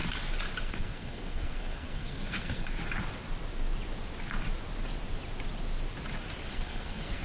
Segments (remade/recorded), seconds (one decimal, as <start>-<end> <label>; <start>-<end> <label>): 0.0-0.6 recorded; 0.6-2.8 remade; 2.8-6.5 recorded; 6.5-7.2 remade